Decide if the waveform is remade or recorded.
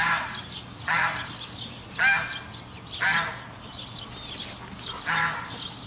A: recorded